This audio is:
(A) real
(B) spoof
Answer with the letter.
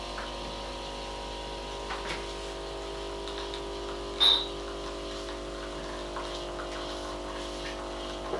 A